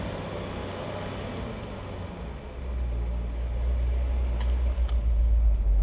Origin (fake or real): real